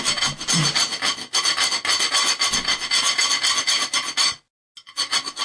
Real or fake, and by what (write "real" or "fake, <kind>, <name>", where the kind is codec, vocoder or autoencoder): real